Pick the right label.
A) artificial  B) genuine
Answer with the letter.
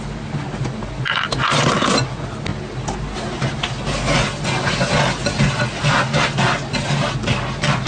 B